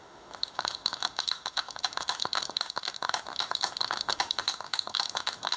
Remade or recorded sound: remade